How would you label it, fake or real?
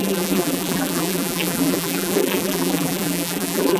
fake